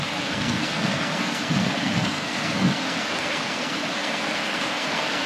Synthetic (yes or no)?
yes